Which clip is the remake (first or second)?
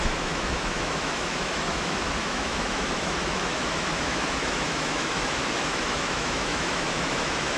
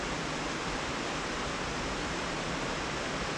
first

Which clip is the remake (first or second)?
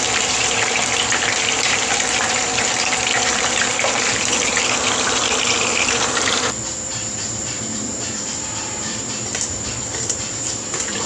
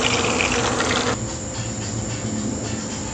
first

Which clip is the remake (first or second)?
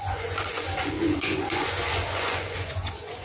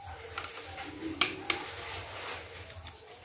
first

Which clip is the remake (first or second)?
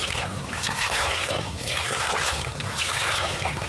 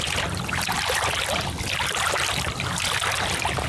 first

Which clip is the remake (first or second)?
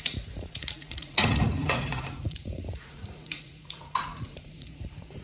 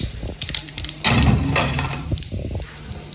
first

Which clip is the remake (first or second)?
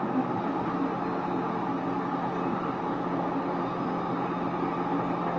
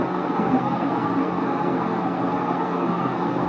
second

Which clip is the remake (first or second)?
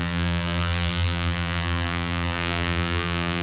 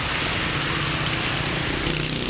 first